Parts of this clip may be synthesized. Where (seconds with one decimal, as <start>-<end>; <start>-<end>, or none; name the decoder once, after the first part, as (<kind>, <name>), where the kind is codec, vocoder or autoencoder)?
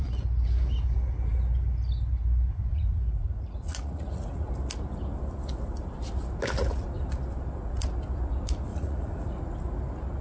2.7-4.5 (vocoder, Vocos); 8.7-9.4